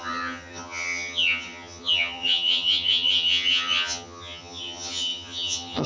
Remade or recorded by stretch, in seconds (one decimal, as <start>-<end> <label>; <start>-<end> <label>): 0.0-5.9 remade